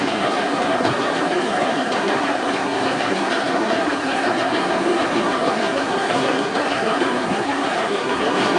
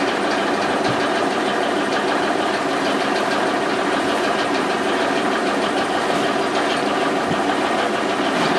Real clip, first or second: second